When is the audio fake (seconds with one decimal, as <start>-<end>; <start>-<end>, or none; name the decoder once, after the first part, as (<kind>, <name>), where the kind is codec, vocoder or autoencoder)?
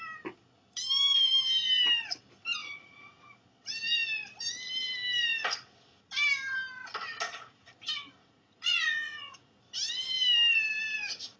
2.6-3.2 (vocoder, Vocos); 8.2-9.6